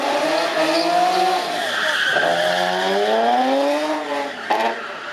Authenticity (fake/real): real